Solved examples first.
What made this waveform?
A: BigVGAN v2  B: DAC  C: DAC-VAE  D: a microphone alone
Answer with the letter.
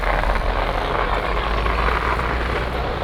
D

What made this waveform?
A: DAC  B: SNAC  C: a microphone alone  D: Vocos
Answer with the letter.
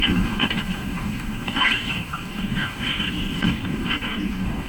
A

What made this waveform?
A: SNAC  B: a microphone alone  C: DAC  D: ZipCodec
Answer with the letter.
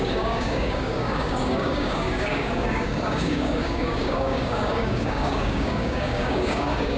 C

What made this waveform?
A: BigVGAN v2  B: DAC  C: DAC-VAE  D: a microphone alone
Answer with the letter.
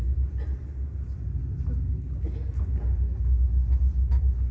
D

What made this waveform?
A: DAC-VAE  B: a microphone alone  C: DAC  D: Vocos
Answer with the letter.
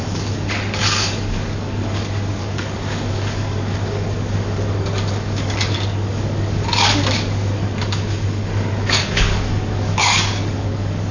C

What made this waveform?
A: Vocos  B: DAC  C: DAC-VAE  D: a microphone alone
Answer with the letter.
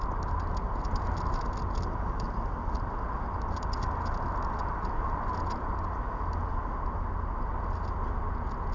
D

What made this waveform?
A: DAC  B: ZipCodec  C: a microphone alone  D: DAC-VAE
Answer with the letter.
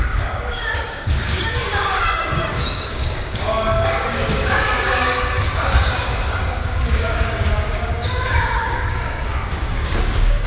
A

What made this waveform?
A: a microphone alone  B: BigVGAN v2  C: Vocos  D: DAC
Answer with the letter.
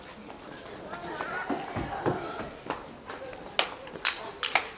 A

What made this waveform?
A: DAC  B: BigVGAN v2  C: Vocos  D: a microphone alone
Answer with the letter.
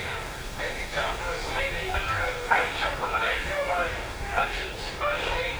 A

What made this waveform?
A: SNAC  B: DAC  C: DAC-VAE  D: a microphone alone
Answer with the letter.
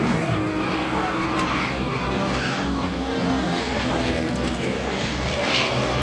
B